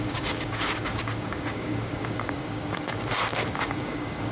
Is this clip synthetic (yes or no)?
yes